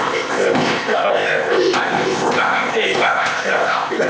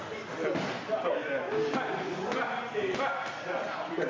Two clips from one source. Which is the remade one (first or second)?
first